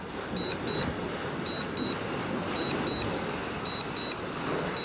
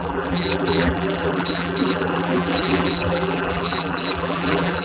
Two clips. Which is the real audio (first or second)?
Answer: first